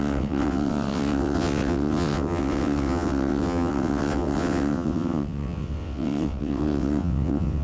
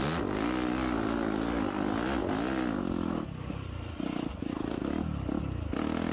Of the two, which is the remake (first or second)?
first